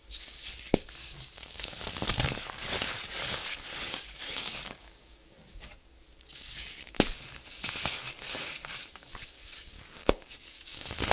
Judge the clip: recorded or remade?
remade